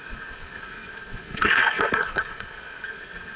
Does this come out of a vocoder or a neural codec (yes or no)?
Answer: yes